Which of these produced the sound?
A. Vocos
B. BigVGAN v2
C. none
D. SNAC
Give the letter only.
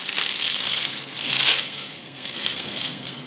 D